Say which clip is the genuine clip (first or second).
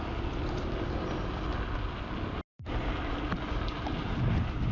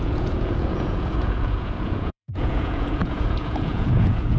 first